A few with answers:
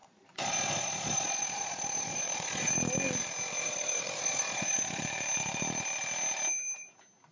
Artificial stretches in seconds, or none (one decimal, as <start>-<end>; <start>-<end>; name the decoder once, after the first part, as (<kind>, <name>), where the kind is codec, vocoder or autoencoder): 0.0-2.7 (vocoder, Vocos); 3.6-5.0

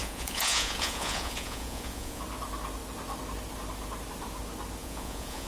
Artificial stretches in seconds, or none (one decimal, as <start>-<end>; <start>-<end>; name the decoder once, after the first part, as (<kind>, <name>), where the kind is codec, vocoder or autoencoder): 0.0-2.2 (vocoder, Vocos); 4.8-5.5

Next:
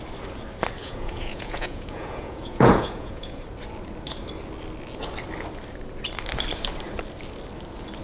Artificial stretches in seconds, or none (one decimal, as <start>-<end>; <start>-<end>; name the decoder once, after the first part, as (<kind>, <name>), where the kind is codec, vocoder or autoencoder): 0.8-3.4 (vocoder, Vocos)